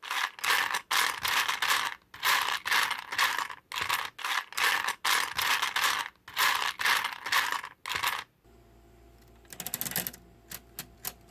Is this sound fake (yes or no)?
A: no